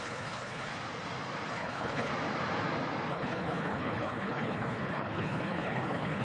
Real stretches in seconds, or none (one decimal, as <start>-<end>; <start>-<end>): 0.7-1.5; 2.1-3.1